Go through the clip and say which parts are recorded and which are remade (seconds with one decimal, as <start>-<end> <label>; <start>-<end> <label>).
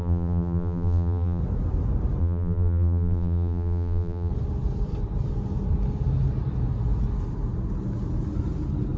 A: 0.0-1.4 remade; 1.4-2.2 recorded; 2.2-4.3 remade; 4.3-9.0 recorded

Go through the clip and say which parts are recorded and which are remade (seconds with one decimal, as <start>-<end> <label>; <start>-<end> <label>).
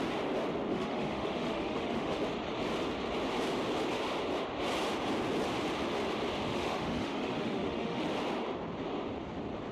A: 0.0-0.7 recorded; 0.7-2.2 remade; 2.2-6.5 recorded; 6.5-8.0 remade; 8.0-9.7 recorded